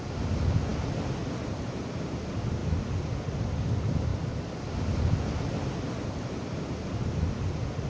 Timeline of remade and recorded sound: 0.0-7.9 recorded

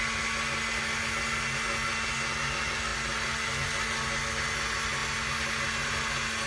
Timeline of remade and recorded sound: 0.0-6.5 recorded

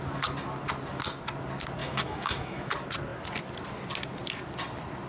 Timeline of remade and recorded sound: 0.0-1.8 recorded; 1.8-2.7 remade; 2.7-5.1 recorded

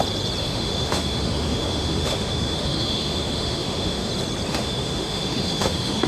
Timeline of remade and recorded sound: 0.0-0.4 recorded; 0.4-4.1 remade; 4.1-4.5 recorded; 4.5-6.1 remade

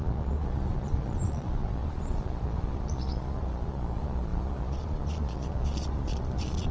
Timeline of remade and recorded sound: 0.0-6.7 remade

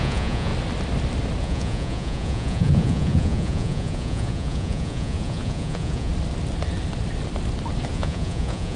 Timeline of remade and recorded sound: 0.0-0.5 remade; 0.5-1.4 recorded; 1.4-6.1 remade; 6.1-7.9 recorded; 7.9-8.8 remade